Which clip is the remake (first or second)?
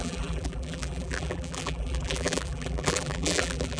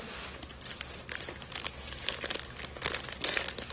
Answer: first